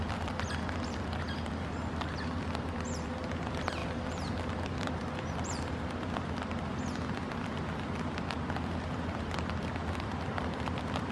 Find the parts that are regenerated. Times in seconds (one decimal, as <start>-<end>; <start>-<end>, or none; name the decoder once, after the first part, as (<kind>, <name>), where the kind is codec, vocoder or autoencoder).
0.0-3.8 (vocoder, BigVGAN v2); 4.3-11.1